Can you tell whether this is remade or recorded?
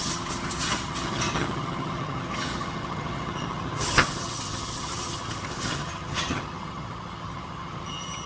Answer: remade